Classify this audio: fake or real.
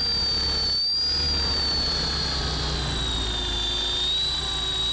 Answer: real